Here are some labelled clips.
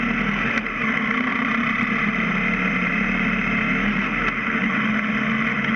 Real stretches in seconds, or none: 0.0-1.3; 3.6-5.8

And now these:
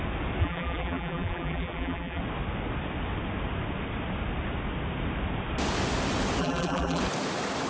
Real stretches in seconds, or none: 0.0-0.4; 2.2-6.4; 7.0-7.7

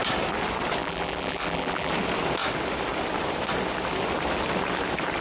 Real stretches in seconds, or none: 0.0-0.8; 1.9-5.2

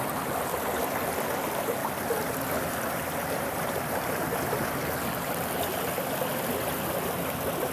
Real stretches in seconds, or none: 0.0-1.8; 4.7-7.7